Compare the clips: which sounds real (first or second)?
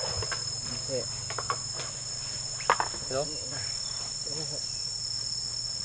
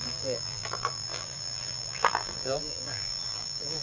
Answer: first